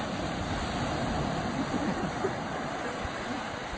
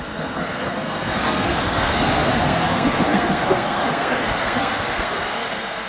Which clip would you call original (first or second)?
first